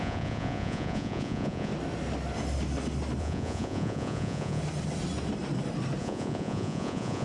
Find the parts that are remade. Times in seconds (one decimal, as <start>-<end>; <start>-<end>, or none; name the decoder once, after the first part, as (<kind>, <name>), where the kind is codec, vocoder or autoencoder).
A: 0.0-1.7 (vocoder, Vocos); 3.2-4.6; 6.0-7.2